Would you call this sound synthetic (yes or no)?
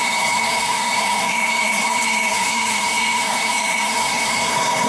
yes